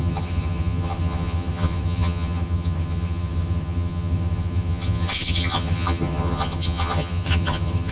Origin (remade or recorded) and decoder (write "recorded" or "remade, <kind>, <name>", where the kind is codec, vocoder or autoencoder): remade, vocoder, HiFi-GAN